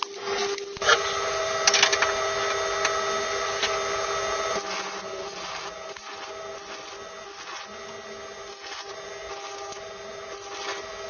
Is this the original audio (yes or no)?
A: yes